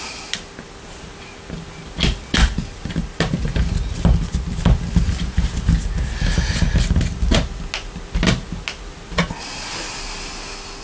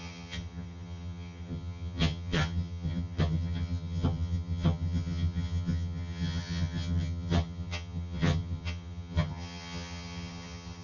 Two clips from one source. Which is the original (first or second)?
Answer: first